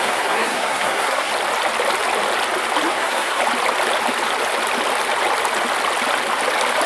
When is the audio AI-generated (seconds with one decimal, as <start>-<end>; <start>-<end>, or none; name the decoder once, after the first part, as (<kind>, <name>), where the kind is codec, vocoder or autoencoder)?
0.0-1.3 (codec, SNAC); 2.9-3.4